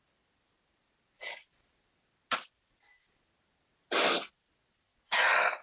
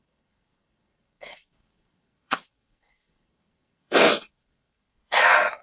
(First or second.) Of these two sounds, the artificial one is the second